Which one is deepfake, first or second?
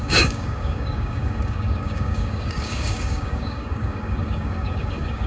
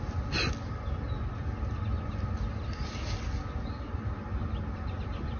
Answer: first